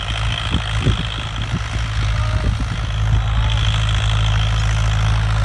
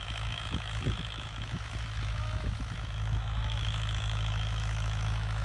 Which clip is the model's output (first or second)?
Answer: second